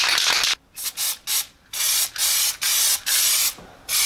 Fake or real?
real